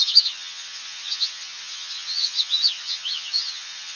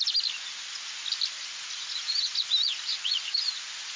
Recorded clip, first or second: second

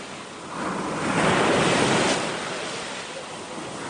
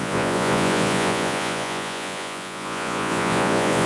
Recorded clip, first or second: first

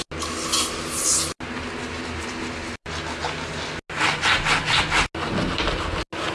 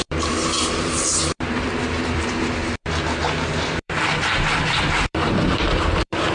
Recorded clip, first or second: first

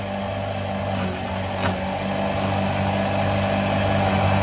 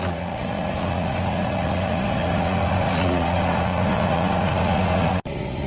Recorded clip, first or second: first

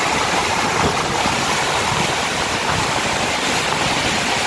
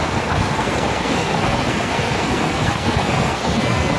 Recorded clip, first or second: first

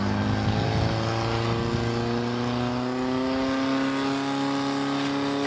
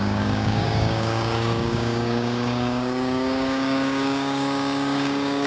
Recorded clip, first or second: first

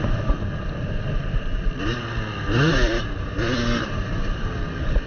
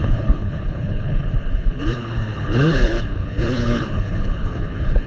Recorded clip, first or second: first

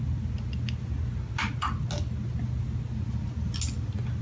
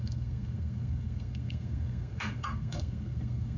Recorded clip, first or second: first